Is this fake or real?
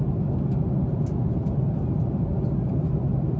real